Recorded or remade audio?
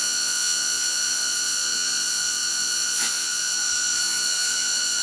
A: remade